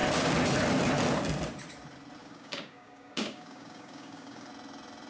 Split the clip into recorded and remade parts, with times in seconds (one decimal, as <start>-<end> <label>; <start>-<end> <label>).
0.0-2.2 recorded; 2.2-4.5 remade; 4.5-5.1 recorded